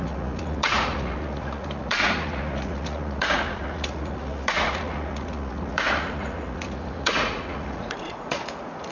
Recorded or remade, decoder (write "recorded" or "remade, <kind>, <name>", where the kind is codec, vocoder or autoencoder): remade, vocoder, Vocos